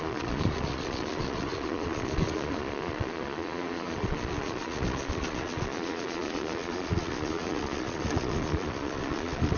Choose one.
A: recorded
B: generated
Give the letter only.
B